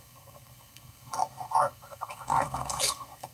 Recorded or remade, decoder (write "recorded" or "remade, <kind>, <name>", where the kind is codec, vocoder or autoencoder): remade, codec, SNAC